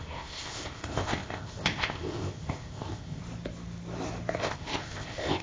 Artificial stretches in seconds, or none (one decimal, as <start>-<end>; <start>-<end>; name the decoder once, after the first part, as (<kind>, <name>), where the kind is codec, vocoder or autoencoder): 0.0-3.2 (codec, ZipCodec); 4.4-5.4